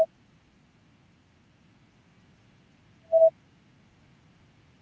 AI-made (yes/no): no